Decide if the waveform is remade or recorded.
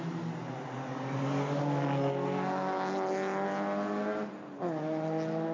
recorded